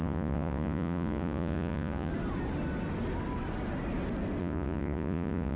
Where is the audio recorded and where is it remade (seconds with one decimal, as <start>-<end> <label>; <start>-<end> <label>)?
0.0-2.1 remade; 2.1-4.4 recorded; 4.4-5.6 remade